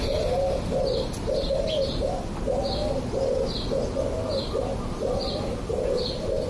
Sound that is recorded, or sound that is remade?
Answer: recorded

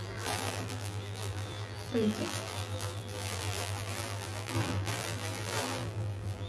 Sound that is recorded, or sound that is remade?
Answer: remade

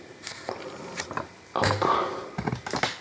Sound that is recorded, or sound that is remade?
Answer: recorded